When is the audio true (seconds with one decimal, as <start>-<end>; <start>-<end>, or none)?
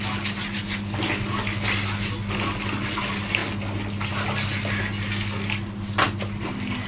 0.0-6.9